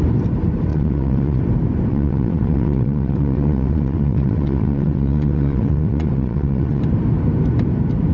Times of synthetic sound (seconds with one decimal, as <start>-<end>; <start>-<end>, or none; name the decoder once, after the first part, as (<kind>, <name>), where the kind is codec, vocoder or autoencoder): 0.7-1.4 (vocoder, WaveNeXt); 1.9-6.8